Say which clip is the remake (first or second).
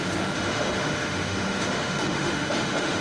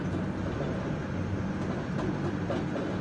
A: first